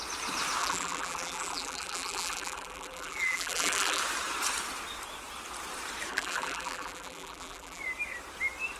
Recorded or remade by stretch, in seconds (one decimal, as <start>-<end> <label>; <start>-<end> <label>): 0.0-0.6 recorded; 0.6-4.0 remade; 4.0-6.1 recorded; 6.1-7.8 remade; 7.8-8.8 recorded